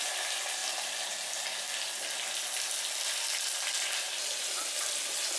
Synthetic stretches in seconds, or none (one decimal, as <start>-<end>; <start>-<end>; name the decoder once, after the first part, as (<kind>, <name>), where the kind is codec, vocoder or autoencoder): none